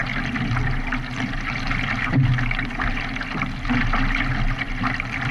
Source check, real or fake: real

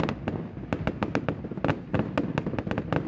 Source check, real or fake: real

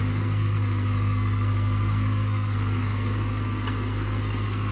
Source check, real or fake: fake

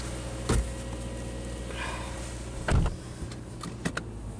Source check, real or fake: real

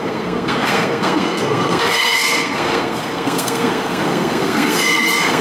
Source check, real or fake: fake